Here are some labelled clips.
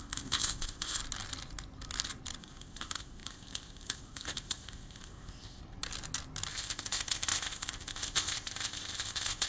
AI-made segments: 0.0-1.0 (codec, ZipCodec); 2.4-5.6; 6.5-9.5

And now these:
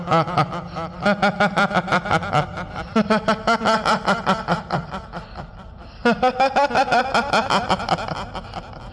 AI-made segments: none

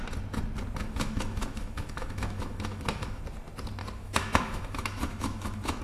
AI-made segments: 0.8-3.2 (autoencoder, DAC-VAE); 3.8-5.8

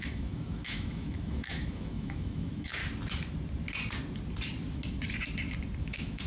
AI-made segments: 0.0-2.8 (autoencoder, DAC-VAE); 5.8-6.3

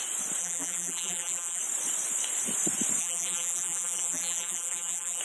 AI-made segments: 0.4-1.6 (vocoder, BigVGAN v2); 3.0-5.2

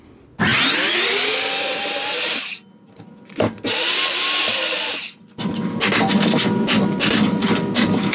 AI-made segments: none